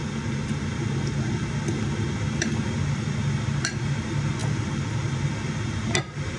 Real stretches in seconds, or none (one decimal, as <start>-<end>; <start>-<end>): 0.0-6.4